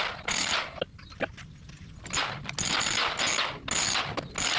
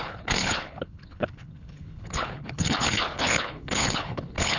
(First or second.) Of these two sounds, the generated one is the second